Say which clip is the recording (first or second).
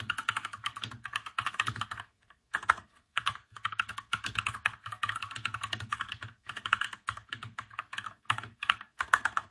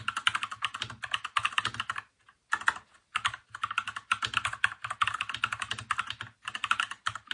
second